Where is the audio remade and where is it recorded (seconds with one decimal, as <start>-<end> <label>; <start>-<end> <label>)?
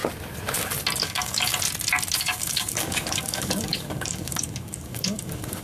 0.0-1.0 recorded; 1.0-1.5 remade; 1.5-2.2 recorded; 2.2-5.6 remade